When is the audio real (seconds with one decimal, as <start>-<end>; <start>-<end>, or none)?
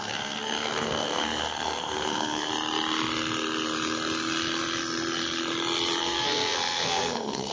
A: 2.5-6.0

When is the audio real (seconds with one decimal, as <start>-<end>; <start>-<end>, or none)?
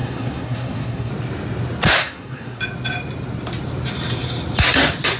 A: 1.1-2.0; 2.6-5.2